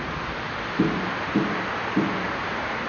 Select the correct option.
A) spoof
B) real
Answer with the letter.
B